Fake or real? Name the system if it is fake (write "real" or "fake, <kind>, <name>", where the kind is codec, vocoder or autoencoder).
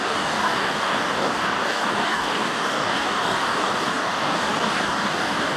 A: fake, codec, DAC